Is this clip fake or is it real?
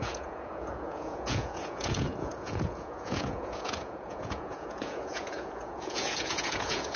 fake